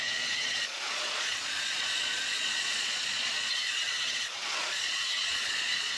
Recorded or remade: remade